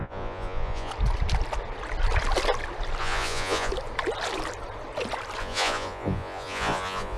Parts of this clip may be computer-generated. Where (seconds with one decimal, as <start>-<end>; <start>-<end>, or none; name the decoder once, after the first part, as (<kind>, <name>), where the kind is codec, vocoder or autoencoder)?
0.0-0.9 (vocoder, Vocos); 3.0-3.7; 5.4-7.2